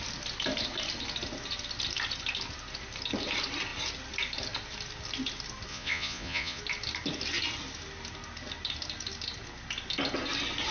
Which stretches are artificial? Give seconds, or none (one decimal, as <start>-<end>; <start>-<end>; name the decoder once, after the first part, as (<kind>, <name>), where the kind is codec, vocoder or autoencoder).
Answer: 5.7-6.6 (vocoder, Vocos)